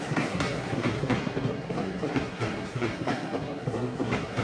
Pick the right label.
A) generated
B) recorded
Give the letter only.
A